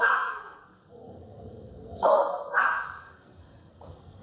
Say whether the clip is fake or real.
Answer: fake